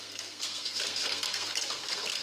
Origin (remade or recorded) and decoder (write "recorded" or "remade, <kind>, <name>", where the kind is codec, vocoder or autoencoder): remade, codec, SNAC